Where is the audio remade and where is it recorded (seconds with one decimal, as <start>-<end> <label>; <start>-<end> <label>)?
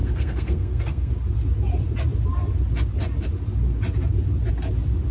0.0-1.1 remade; 1.1-5.1 recorded